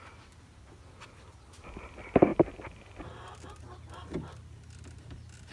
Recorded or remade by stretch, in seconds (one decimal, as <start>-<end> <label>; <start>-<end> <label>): 0.0-5.5 recorded